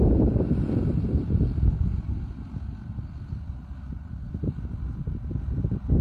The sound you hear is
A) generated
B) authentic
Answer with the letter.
B